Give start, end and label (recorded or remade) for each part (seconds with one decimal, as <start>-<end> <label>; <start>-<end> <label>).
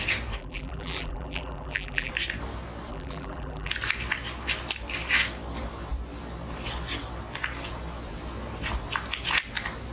0.0-0.4 recorded; 0.4-2.1 remade; 2.1-2.9 recorded; 2.9-3.7 remade; 3.7-9.9 recorded